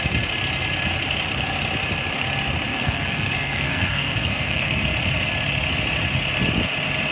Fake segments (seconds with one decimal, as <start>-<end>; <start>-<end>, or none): 2.7-4.8